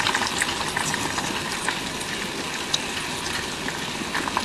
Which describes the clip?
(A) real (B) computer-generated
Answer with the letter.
A